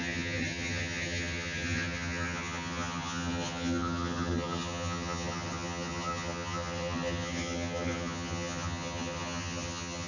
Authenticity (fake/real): fake